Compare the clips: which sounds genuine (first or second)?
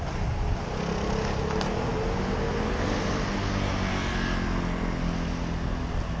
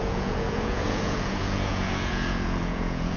first